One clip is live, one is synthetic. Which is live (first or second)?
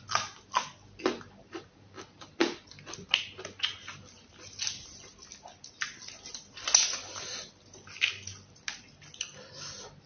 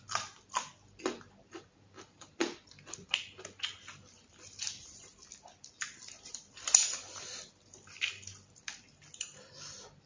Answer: first